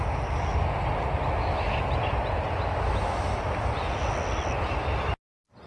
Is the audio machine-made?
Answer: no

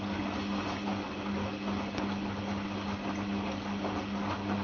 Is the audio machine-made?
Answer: no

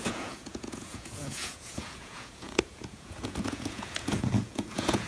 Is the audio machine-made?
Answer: yes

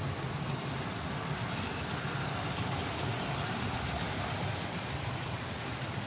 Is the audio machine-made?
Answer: no